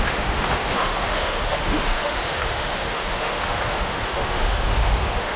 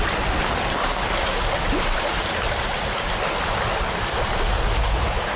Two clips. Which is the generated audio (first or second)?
first